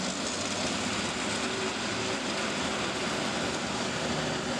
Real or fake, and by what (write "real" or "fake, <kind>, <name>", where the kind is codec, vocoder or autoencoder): real